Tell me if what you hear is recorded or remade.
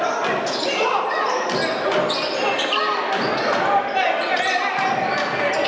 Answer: recorded